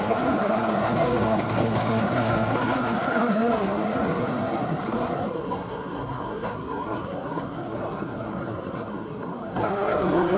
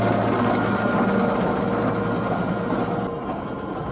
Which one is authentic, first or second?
second